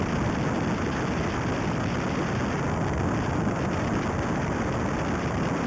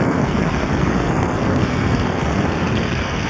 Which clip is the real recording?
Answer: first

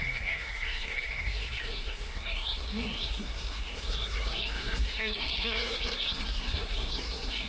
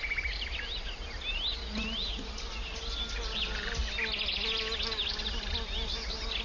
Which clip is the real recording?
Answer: second